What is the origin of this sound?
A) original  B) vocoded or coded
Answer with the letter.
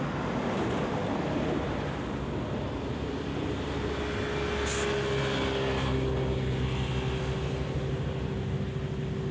A